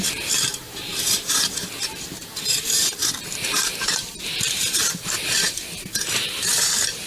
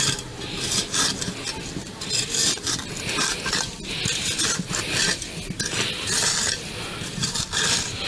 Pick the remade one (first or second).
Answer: first